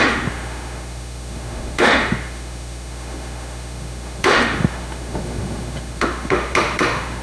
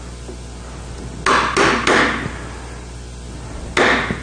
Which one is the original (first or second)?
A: second